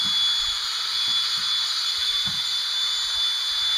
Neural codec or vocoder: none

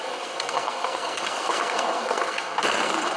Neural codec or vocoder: codec, SNAC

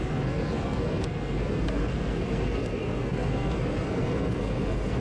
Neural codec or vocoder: codec, SNAC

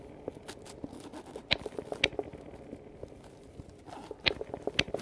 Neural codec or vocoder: none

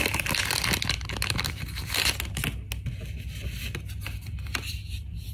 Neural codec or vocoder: none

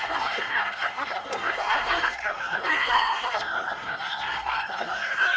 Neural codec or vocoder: codec, SNAC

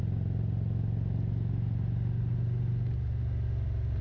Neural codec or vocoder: none